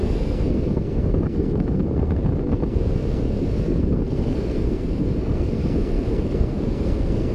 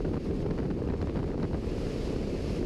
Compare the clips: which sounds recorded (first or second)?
second